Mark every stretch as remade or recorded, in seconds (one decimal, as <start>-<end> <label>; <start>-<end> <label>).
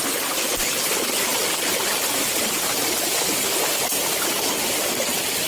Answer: 0.0-5.5 recorded